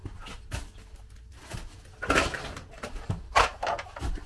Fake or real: real